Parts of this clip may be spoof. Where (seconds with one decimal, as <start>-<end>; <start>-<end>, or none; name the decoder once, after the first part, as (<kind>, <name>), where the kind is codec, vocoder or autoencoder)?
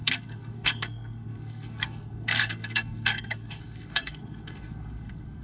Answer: 0.0-5.4 (codec, SNAC)